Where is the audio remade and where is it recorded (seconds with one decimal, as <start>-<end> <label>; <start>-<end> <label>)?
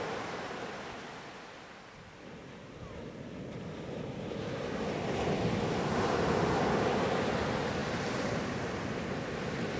0.0-9.8 recorded